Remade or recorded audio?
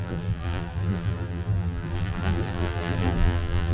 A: remade